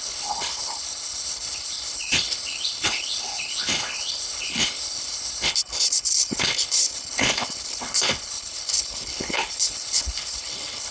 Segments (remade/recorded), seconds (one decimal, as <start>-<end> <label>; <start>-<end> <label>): 0.0-10.9 remade